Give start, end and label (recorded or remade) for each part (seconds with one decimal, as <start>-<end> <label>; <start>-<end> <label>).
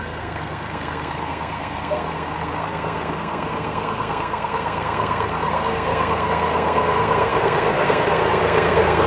0.0-9.1 remade